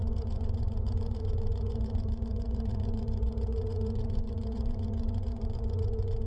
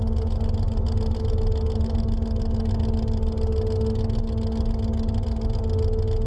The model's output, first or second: first